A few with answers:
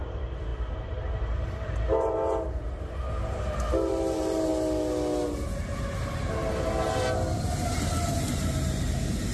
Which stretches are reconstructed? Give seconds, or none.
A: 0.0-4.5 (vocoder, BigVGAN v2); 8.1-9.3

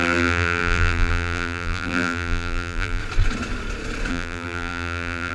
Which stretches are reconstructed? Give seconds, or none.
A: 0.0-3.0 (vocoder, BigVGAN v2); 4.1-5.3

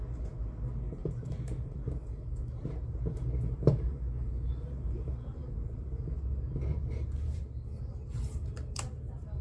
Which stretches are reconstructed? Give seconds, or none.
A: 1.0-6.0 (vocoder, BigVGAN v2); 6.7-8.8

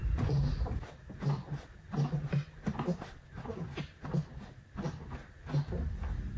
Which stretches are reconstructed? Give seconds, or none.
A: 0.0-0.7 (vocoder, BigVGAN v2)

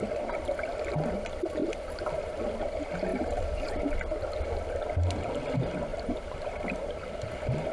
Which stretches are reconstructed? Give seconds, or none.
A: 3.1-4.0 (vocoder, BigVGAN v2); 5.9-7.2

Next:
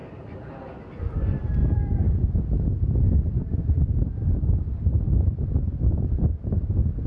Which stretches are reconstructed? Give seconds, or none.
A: 0.0-7.1 (vocoder, BigVGAN v2)

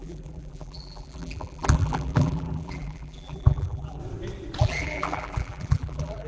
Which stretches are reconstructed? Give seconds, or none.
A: 0.0-4.0 (vocoder, BigVGAN v2); 4.6-6.3